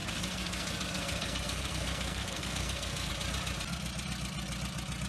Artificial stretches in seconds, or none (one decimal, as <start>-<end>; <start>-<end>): 0.0-3.1